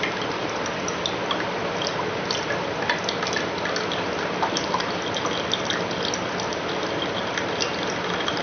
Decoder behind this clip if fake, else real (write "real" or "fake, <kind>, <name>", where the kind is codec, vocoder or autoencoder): real